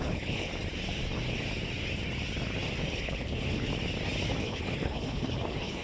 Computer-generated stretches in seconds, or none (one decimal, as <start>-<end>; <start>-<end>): 0.0-0.5; 2.9-3.7; 4.4-5.8